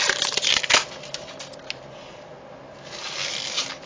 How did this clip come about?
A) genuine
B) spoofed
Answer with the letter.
A